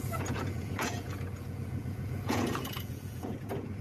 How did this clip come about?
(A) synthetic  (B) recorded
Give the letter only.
A